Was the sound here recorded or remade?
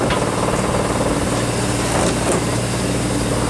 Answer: recorded